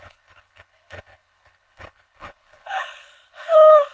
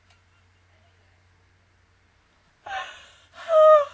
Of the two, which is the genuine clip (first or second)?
second